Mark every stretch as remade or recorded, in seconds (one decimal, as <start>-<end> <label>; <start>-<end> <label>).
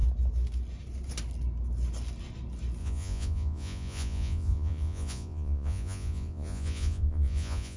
0.0-2.8 recorded; 2.8-7.8 remade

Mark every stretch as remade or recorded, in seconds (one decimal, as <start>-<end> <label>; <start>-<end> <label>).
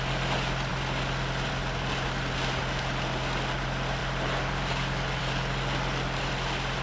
0.0-6.8 recorded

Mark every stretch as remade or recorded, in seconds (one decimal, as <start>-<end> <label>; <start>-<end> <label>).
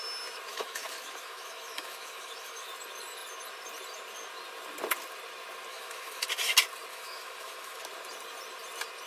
0.0-0.5 recorded; 0.5-2.7 remade; 2.7-5.7 recorded; 5.7-6.3 remade; 6.3-6.9 recorded; 6.9-7.8 remade; 7.8-9.1 recorded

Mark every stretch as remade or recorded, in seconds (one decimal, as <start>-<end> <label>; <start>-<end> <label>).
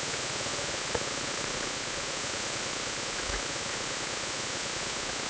0.0-5.3 remade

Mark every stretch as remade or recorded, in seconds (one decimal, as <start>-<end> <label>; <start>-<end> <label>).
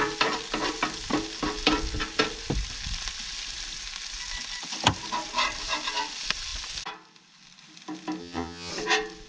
0.0-8.2 recorded; 8.2-8.7 remade; 8.7-9.3 recorded